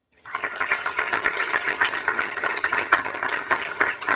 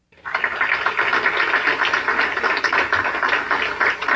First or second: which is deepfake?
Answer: first